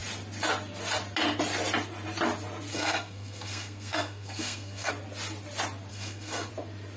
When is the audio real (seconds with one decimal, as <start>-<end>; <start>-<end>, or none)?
0.0-2.7; 4.9-5.9; 6.5-7.0